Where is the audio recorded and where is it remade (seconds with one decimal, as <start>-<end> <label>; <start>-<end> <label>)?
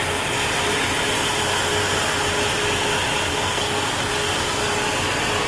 0.0-3.3 recorded; 3.3-3.9 remade; 3.9-5.5 recorded